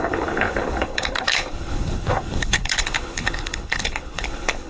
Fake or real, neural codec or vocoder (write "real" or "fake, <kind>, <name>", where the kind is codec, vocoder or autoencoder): fake, codec, HILCodec